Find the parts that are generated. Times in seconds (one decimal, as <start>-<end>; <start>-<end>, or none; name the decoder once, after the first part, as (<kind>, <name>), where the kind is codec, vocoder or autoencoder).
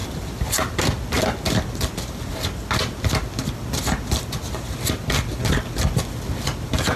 none